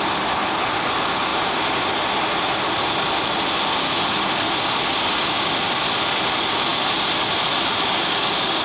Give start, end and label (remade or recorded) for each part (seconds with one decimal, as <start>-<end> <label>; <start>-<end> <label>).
0.0-8.6 recorded